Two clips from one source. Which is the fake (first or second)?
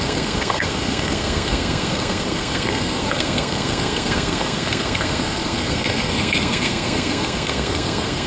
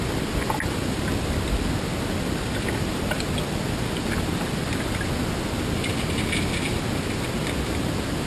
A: first